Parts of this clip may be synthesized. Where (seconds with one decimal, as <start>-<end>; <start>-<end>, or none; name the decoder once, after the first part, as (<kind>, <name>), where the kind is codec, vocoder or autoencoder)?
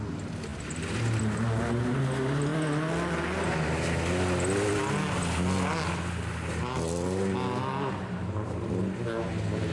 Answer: none